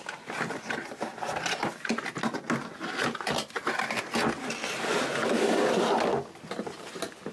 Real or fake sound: real